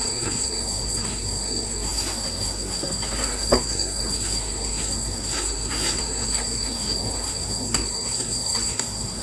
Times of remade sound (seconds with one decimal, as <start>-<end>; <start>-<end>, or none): 0.0-9.2